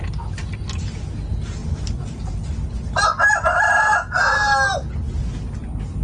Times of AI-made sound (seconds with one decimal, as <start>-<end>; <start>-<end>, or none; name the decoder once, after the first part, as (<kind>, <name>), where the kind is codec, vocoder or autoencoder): none